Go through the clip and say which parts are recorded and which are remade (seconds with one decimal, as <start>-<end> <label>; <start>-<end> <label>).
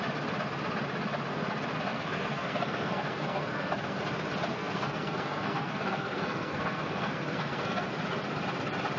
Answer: 0.0-1.9 recorded; 1.9-4.0 remade; 4.0-4.5 recorded; 4.5-7.9 remade; 7.9-9.0 recorded